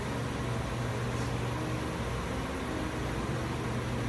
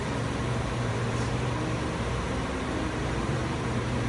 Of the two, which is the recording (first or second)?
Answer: first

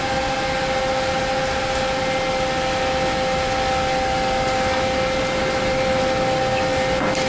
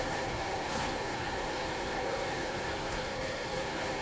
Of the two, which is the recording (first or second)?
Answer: first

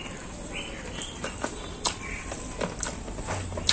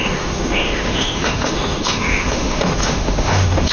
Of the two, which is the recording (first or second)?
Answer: first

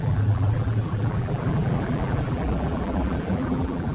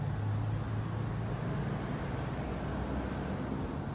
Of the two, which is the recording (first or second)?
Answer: second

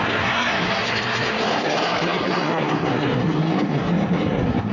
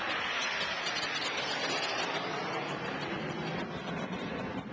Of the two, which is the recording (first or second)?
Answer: second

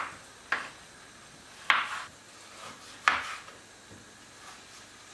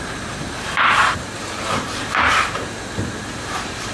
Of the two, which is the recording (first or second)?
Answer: first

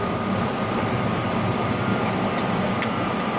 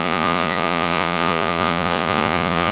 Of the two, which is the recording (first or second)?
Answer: first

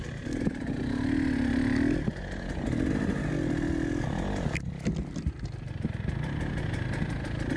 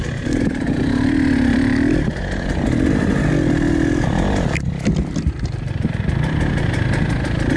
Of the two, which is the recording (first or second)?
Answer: first